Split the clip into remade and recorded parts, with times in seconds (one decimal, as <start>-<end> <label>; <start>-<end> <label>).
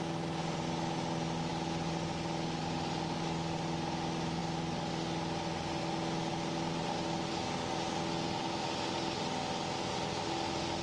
0.0-10.8 recorded